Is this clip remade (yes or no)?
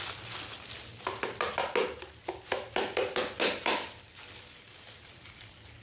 no